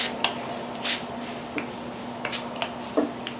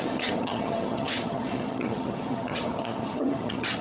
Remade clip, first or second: second